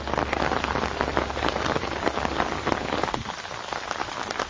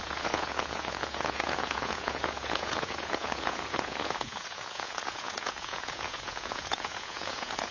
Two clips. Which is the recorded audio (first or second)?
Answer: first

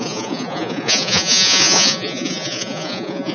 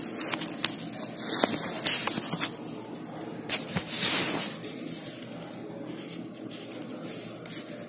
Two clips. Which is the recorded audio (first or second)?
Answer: second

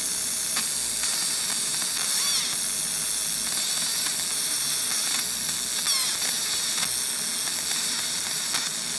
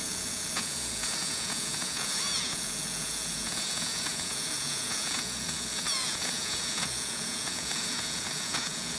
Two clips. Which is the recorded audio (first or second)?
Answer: first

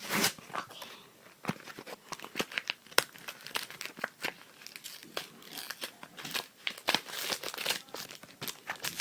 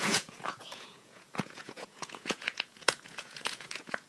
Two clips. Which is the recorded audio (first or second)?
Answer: first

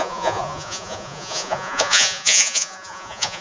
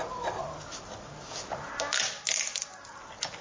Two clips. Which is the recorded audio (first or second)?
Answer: second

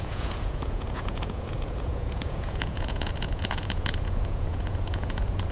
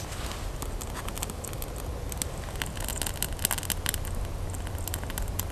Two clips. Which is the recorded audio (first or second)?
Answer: second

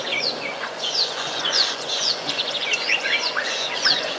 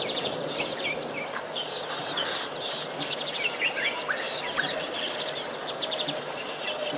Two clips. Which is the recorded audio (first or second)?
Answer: second